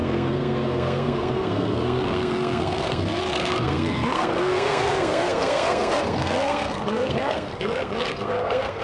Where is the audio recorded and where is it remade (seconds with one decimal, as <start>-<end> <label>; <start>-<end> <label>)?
0.0-8.8 remade